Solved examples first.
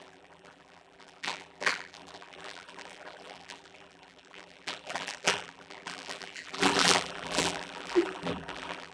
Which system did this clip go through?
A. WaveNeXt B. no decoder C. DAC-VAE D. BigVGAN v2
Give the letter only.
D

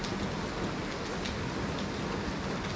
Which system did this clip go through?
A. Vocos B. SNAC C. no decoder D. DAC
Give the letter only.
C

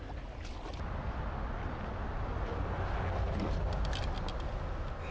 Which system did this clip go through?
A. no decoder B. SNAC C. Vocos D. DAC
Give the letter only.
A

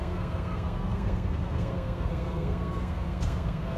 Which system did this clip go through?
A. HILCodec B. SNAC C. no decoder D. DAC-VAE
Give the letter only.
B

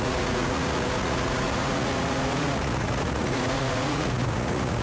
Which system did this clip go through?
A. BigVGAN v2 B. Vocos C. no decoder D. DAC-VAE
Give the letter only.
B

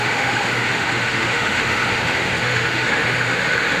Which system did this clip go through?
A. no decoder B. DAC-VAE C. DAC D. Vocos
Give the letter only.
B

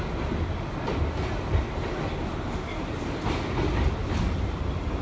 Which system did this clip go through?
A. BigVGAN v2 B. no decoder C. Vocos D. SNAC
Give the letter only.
B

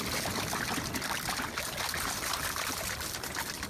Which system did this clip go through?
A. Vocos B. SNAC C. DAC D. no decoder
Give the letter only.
D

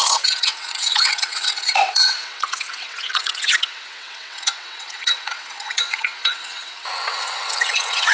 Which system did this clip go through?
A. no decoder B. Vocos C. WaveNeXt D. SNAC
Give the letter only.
C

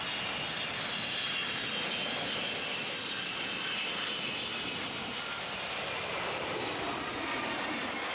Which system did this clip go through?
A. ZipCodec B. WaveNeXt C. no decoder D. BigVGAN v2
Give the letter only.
C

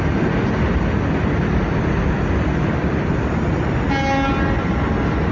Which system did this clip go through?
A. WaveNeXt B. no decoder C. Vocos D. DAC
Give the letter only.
B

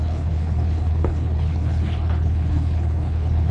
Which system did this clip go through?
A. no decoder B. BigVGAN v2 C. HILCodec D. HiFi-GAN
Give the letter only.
C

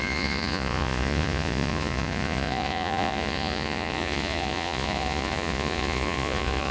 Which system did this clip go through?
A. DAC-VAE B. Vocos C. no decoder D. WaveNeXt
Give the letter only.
B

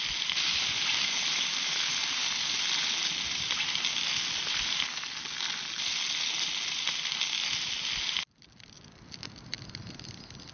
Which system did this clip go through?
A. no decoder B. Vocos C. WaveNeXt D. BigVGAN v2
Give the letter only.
A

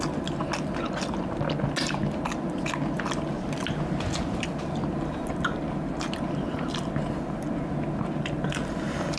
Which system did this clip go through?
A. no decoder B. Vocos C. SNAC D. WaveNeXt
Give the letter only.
A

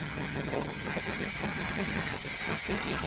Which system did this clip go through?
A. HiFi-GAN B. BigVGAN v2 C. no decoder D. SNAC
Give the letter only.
A